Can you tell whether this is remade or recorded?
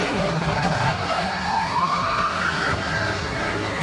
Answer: remade